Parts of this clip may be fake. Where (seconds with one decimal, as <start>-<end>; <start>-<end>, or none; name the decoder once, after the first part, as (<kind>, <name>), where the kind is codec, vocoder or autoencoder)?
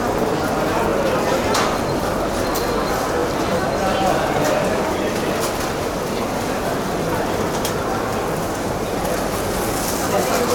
none